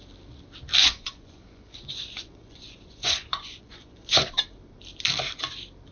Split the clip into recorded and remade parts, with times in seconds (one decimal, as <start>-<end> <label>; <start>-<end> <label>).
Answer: 0.0-0.8 recorded; 0.8-4.3 remade; 4.3-5.9 recorded